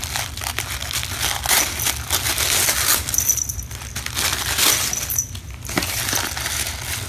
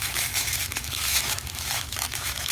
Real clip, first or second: first